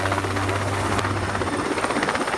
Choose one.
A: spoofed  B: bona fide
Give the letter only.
B